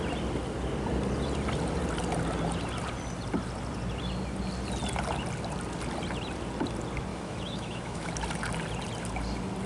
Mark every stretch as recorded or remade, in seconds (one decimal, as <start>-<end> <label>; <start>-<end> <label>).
0.0-7.1 recorded; 7.1-8.1 remade; 8.1-9.7 recorded